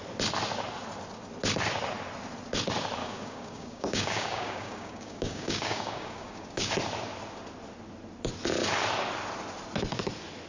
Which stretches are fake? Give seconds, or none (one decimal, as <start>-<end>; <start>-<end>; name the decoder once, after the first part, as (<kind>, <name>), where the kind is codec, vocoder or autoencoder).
3.0-6.7 (codec, DAC)